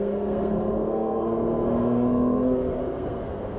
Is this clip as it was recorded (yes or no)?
no